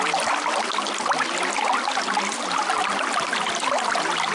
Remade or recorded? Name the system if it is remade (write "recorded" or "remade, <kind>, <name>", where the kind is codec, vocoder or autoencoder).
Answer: recorded